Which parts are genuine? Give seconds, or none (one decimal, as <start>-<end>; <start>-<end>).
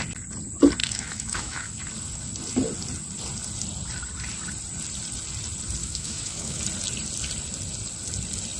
0.0-0.8; 1.8-5.8; 6.6-8.6